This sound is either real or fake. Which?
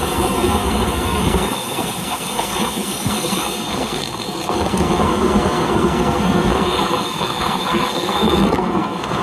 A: fake